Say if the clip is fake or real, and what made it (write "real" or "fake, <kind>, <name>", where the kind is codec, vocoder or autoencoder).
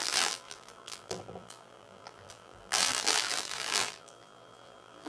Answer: fake, vocoder, BigVGAN v2